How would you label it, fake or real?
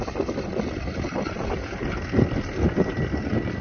real